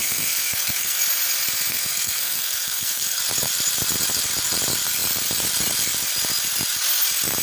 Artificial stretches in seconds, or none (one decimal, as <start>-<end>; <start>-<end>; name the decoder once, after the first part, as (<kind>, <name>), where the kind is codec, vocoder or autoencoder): 0.0-1.0 (codec, SNAC); 1.7-3.2

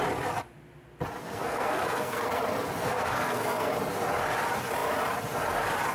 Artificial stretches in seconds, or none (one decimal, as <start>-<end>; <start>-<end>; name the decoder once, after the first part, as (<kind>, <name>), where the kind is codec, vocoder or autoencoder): 1.2-2.4 (codec, SNAC); 2.8-3.7

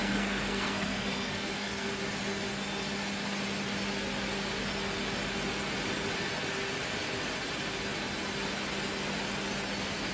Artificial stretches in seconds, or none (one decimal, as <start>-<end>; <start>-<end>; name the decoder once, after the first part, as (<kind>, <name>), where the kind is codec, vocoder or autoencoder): 0.0-1.9 (codec, SNAC)

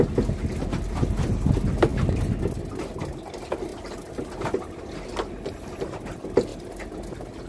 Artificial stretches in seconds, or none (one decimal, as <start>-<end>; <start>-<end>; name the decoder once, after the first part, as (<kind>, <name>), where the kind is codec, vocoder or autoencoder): none

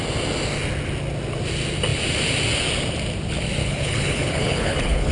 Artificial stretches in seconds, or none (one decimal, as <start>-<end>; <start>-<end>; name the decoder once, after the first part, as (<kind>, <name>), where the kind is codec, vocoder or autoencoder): 3.6-5.1 (codec, HILCodec)